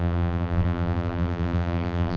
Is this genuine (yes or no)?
no